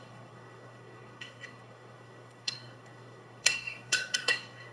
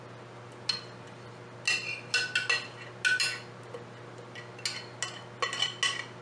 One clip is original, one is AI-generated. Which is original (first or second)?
second